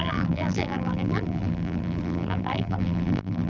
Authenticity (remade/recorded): remade